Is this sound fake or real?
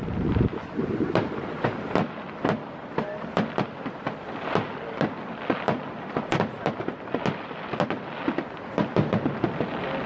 real